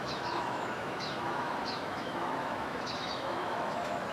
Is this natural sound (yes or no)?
no